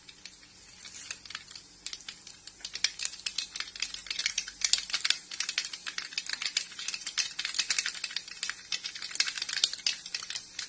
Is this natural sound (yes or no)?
yes